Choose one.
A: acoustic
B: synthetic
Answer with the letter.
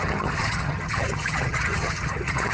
B